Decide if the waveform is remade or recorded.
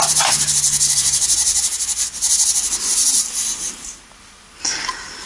recorded